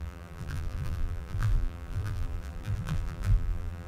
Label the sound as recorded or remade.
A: remade